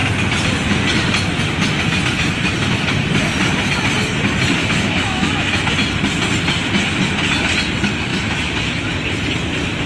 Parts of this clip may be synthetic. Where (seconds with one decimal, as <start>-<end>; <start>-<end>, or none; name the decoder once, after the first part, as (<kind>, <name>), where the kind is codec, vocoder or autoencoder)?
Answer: 4.6-5.7 (autoencoder, DAC-VAE); 8.1-8.9

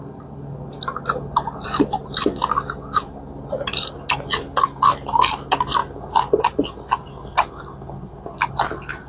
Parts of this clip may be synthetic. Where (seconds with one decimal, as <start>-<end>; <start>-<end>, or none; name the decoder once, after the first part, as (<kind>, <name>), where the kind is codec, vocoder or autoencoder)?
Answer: none

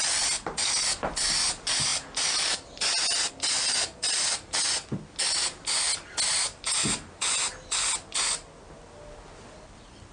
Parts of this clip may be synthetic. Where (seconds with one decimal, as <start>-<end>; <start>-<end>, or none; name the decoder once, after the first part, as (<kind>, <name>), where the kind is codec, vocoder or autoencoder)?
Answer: none

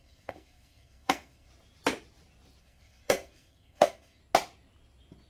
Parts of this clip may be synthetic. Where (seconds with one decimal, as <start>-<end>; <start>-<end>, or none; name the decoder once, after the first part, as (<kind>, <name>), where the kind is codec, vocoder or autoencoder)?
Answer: 0.0-1.5 (codec, SNAC); 2.6-4.2

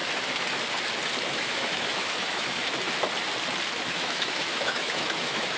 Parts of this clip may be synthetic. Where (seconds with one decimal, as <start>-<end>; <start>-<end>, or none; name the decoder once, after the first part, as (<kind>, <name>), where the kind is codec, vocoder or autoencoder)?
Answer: 1.3-2.6 (autoencoder, DAC-VAE); 3.8-5.6

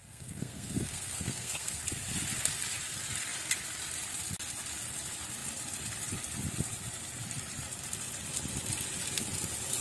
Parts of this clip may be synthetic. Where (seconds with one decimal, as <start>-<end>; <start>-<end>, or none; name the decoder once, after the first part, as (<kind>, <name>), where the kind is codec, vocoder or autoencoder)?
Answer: 0.0-1.8 (codec, SNAC)

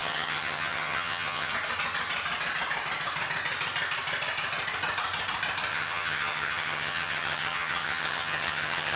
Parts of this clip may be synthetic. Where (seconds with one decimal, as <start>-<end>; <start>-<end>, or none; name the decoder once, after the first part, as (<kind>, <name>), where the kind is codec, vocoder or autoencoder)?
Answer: 0.0-1.5 (vocoder, HiFi-GAN); 5.7-9.0